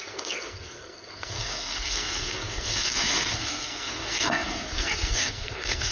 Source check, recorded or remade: remade